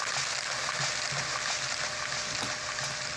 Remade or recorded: recorded